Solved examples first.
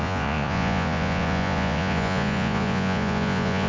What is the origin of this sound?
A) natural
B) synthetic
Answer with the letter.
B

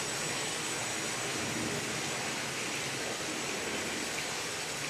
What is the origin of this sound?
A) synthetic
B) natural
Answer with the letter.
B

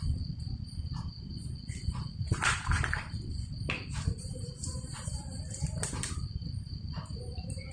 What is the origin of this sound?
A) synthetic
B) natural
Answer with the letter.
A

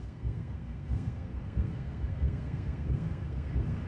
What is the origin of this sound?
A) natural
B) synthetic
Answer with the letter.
B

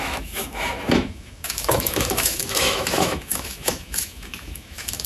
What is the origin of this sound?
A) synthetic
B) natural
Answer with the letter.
A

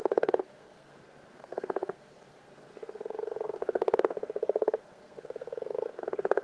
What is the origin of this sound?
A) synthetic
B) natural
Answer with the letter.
A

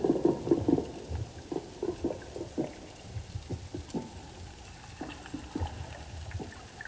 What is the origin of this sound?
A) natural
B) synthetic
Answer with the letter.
A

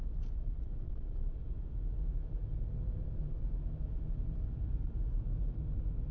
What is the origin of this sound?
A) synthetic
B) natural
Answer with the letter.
B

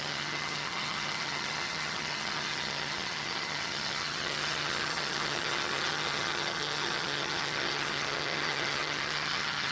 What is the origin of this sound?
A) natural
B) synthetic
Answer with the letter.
B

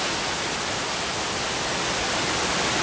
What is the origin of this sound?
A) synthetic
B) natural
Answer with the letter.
B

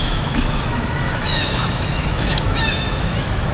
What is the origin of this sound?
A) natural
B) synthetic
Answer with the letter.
B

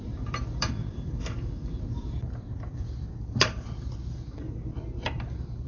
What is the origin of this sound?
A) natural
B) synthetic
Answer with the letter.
B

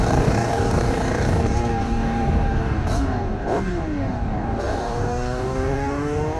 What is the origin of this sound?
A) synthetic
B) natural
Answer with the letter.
A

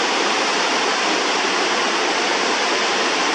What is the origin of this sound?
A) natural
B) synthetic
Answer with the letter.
B